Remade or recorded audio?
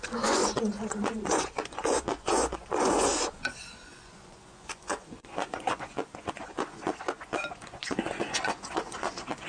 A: remade